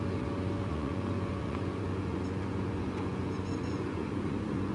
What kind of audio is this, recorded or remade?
remade